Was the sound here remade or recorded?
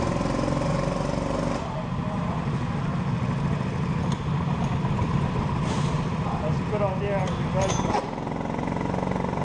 recorded